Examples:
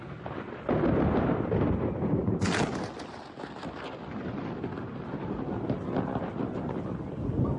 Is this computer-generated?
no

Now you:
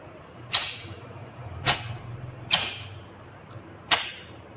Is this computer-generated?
yes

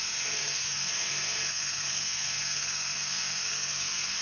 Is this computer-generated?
yes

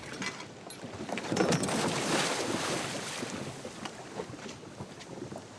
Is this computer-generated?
no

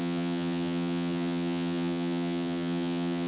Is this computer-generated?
yes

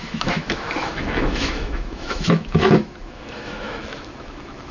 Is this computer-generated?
yes